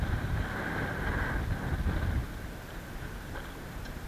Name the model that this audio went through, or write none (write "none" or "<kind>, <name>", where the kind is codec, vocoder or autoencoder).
none